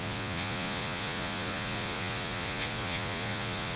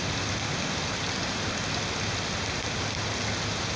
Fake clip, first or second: first